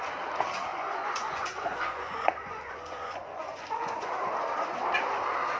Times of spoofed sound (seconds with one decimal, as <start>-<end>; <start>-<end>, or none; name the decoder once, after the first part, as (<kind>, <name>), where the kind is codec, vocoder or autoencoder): 0.7-4.1 (vocoder, Vocos)